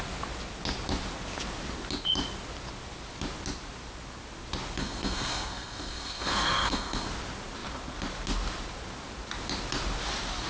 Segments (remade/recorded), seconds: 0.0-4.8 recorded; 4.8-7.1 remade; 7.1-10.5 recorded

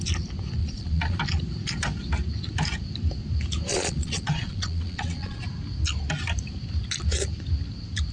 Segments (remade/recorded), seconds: 0.0-0.6 recorded; 0.6-1.2 remade; 1.2-3.7 recorded; 3.7-5.4 remade; 5.4-8.1 recorded